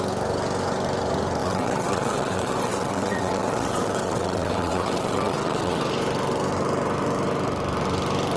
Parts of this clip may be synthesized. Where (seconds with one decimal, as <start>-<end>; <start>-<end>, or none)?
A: 1.4-5.8